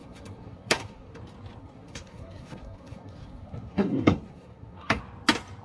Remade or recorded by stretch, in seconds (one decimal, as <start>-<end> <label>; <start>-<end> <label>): 0.0-1.2 remade; 1.2-1.6 recorded; 1.6-5.0 remade; 5.0-5.6 recorded